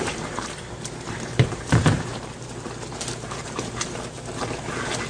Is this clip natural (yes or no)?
no